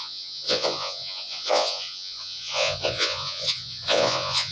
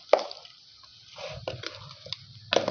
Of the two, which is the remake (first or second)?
first